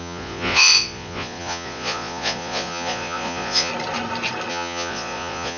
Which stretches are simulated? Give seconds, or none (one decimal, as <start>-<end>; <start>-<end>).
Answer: 0.0-3.7; 4.5-5.6